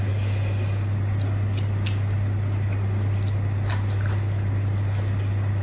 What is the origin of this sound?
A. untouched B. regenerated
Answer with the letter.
A